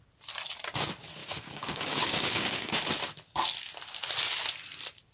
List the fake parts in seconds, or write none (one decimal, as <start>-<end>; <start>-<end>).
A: 1.2-2.7